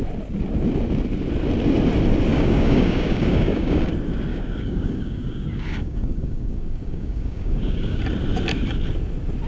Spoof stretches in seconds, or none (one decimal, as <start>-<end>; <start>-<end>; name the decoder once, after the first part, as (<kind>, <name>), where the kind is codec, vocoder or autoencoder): 2.3-3.9 (codec, DAC); 4.3-8.0